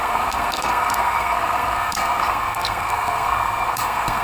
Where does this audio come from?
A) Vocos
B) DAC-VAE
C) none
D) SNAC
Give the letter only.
D